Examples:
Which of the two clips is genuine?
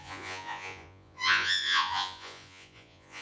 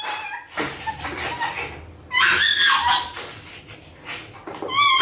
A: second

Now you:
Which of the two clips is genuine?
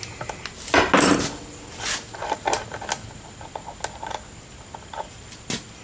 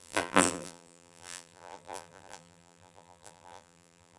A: first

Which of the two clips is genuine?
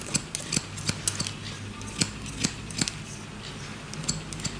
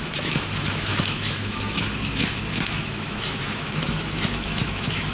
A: first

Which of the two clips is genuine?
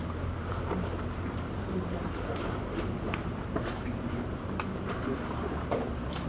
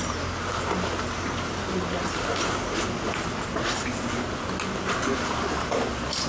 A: second